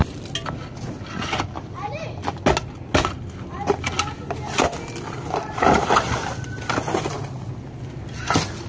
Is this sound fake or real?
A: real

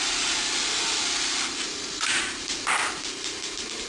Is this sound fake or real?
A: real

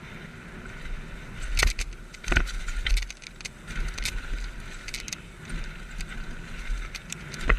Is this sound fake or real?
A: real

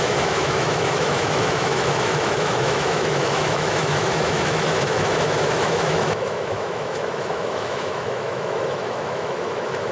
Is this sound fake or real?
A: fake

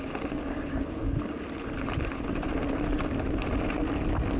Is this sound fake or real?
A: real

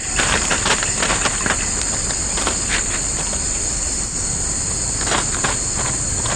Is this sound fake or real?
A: real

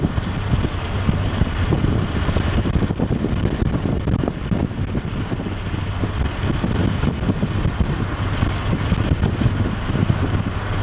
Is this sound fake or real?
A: real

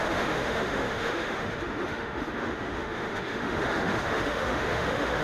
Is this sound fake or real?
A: fake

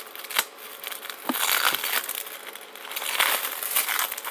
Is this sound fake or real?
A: real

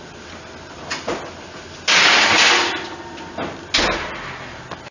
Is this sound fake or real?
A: real